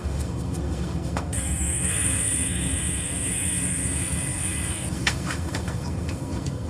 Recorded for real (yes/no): no